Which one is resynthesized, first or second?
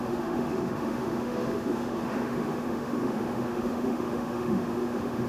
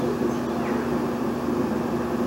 first